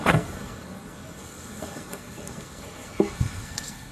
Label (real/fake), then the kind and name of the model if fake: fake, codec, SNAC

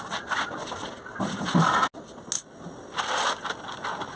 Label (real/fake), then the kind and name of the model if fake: real